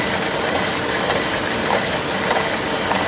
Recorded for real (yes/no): yes